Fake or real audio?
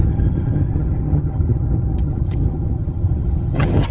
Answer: fake